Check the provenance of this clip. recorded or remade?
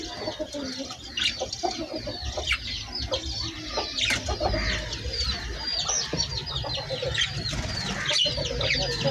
recorded